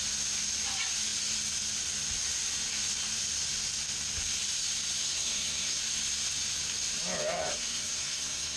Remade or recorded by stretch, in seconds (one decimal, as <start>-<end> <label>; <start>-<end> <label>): 0.0-5.0 recorded; 5.0-5.8 remade; 5.8-7.5 recorded; 7.5-8.6 remade